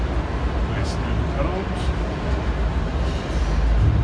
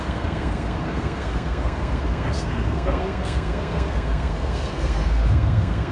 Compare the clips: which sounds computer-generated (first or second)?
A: second